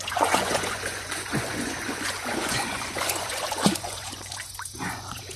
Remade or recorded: remade